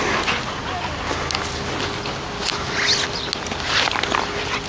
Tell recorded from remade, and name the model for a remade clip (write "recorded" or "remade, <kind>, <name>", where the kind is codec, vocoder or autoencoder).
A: recorded